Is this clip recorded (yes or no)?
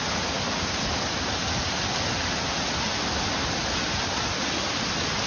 yes